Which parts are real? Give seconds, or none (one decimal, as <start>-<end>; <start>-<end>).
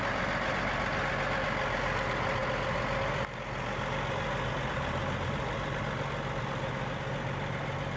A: 0.0-8.0